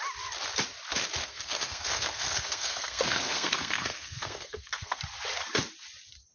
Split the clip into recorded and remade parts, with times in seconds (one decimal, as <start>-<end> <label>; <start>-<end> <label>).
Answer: 0.0-1.2 recorded; 1.2-5.0 remade; 5.0-6.3 recorded